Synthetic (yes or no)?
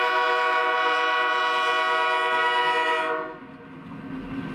no